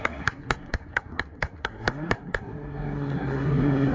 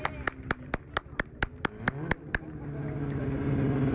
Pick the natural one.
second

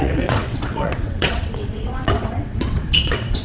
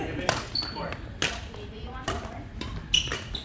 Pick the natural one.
second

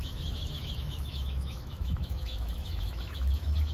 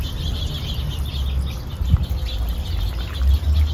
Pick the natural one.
second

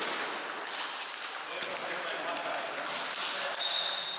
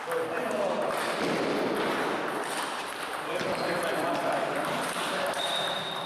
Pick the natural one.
first